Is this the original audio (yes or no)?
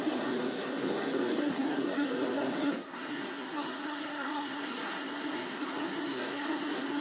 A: no